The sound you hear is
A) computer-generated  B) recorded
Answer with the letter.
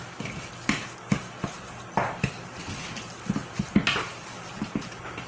B